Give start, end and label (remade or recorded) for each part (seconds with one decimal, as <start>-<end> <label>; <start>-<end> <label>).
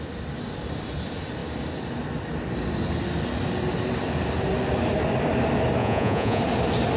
0.0-5.8 recorded; 5.8-6.4 remade; 6.4-7.0 recorded